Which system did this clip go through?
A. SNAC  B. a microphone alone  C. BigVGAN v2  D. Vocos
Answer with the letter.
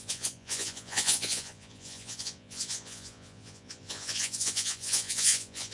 D